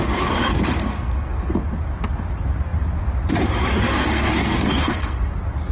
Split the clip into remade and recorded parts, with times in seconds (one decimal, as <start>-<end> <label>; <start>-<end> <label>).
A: 0.0-0.9 recorded; 0.9-1.5 remade; 1.5-3.9 recorded; 3.9-5.3 remade; 5.3-5.7 recorded